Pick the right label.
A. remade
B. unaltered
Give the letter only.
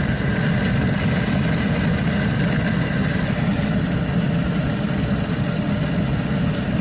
B